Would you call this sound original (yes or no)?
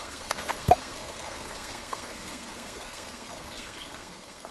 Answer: no